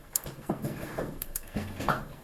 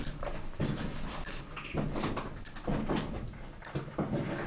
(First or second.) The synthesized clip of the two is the first